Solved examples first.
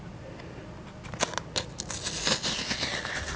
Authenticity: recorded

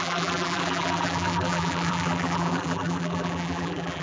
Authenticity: remade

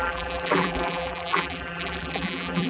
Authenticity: remade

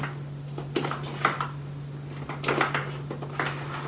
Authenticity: recorded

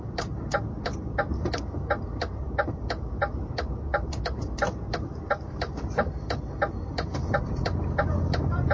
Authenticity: remade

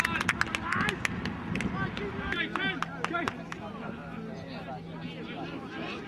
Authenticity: recorded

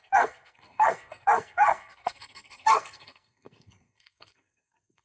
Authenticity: remade